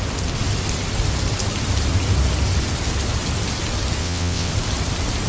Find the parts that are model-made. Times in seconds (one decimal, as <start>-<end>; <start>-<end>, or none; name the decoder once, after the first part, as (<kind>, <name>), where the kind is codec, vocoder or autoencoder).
4.0-4.5 (vocoder, WaveNeXt)